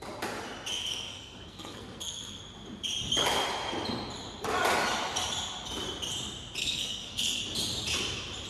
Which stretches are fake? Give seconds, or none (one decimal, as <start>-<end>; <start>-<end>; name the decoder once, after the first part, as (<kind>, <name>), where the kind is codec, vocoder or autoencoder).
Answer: 0.7-2.4 (codec, SNAC); 6.6-7.4